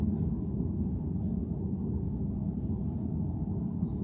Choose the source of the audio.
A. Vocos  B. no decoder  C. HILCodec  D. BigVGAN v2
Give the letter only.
B